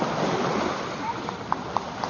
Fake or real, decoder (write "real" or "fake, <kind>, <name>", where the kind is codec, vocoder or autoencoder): real